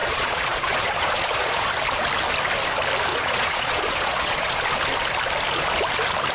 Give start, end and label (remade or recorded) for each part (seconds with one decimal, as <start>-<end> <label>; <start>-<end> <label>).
0.0-1.7 remade; 1.7-3.1 recorded; 3.1-4.6 remade; 4.6-6.3 recorded